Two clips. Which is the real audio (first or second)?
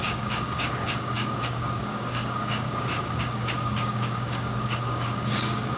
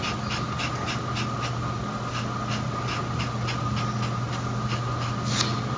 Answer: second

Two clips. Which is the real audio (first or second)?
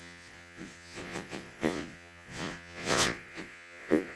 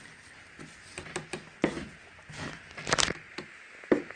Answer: second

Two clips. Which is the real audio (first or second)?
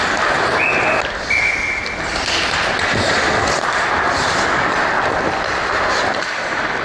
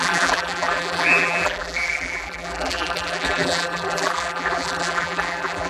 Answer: first